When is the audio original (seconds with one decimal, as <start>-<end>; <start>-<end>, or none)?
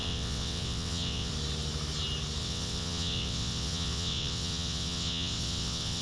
1.3-2.4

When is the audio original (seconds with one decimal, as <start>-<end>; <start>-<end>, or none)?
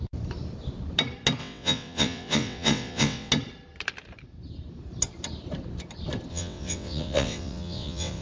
0.0-1.4; 3.3-6.3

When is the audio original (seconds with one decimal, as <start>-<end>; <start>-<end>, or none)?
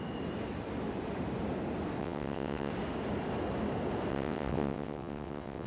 0.0-2.0; 2.7-4.1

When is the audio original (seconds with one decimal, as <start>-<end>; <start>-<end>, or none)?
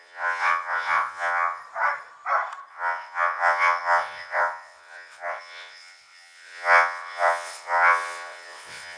1.6-2.7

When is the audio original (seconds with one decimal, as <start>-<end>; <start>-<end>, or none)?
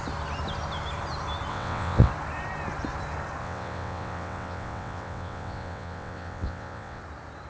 0.0-1.5; 2.1-3.4; 7.0-7.5